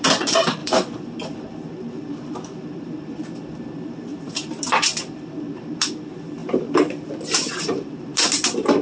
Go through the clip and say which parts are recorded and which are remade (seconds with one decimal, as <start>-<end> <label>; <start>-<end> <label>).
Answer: 0.0-0.6 remade; 0.6-1.3 recorded; 1.3-8.8 remade